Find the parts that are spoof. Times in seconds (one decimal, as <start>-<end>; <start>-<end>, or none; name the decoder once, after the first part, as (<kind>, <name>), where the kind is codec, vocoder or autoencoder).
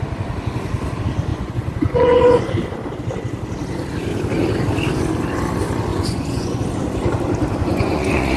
1.3-2.5 (vocoder, Vocos); 5.9-6.6; 7.6-8.4